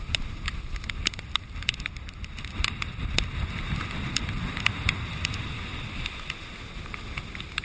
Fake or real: real